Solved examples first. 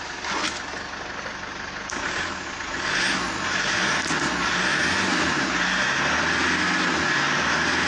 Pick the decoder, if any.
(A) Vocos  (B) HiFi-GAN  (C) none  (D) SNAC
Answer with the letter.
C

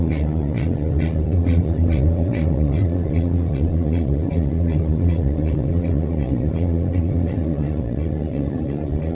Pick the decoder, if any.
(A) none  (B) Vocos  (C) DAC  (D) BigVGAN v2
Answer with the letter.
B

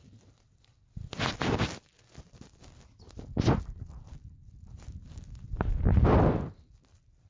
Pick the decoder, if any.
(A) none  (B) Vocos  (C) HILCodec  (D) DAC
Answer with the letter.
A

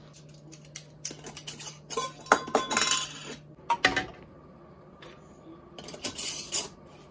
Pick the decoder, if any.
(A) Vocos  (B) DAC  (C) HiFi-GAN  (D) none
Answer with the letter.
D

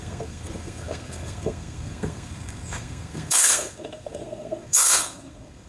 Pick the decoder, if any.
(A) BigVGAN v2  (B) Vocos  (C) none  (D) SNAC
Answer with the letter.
D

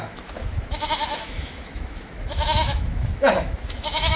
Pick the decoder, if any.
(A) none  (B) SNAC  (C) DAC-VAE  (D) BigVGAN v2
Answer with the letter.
C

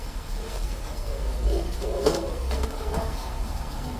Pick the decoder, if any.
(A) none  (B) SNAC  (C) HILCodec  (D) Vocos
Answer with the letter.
B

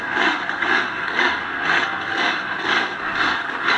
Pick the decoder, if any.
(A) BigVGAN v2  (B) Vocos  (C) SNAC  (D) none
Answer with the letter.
C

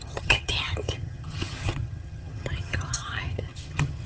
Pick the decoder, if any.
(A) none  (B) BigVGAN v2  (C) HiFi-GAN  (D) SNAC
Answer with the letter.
C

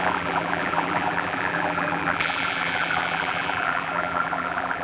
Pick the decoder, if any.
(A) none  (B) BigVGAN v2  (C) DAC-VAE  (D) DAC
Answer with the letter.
B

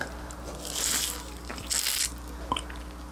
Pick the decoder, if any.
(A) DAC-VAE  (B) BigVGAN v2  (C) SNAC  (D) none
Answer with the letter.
D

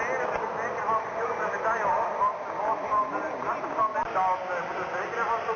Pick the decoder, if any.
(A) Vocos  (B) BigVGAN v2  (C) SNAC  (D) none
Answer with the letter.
D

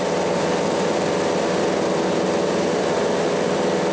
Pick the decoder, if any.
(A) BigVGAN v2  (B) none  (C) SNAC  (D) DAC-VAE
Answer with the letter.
B